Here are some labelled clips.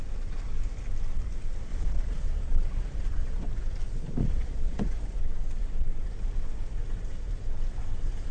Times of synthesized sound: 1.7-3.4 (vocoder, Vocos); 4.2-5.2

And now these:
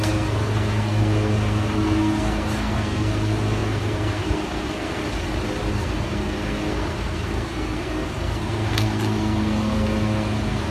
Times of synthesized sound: 0.0-5.0 (codec, SNAC); 5.7-10.7